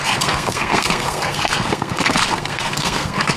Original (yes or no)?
no